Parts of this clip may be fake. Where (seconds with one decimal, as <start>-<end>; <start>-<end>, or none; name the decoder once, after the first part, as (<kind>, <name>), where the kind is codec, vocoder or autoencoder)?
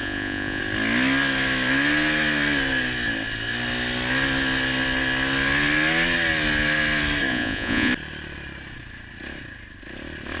0.0-0.6 (vocoder, Vocos); 7.3-7.9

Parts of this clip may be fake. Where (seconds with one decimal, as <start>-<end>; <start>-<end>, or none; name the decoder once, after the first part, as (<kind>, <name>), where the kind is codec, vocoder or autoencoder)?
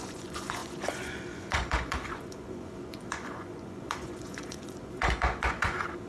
0.0-6.1 (vocoder, Vocos)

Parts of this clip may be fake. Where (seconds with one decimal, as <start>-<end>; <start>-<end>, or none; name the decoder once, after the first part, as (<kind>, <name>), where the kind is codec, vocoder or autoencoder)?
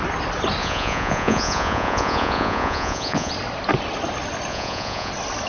0.6-3.3 (vocoder, Vocos); 4.5-5.1